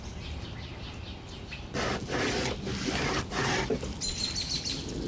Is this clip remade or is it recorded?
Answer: recorded